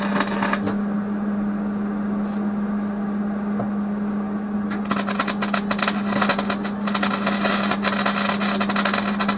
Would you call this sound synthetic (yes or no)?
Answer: no